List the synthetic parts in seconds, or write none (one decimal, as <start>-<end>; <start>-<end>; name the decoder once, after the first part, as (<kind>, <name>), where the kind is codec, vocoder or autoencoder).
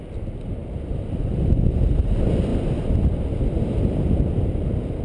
none